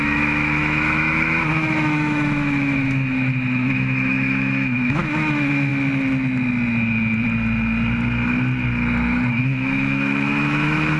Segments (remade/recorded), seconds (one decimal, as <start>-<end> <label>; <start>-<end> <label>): 0.0-5.7 remade; 5.7-9.4 recorded; 9.4-11.0 remade